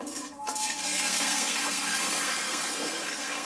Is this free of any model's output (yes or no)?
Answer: no